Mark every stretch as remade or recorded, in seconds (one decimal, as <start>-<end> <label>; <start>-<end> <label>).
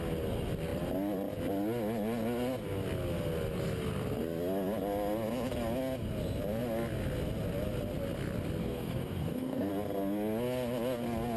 0.0-8.6 recorded; 8.6-9.7 remade; 9.7-11.4 recorded